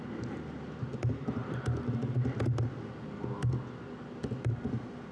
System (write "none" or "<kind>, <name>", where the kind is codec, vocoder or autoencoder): none